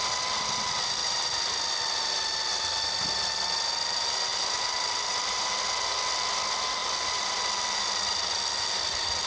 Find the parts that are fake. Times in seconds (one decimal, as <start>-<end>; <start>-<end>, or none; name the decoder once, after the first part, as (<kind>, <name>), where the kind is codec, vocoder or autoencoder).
4.3-5.5 (vocoder, BigVGAN v2); 6.8-7.4